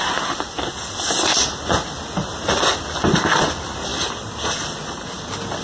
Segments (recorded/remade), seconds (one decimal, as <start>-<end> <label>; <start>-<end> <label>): 0.0-5.6 recorded